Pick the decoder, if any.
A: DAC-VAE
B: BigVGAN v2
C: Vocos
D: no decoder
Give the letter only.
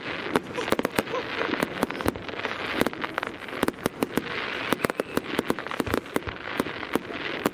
D